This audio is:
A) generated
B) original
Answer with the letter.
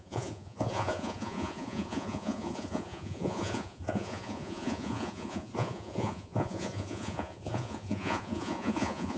A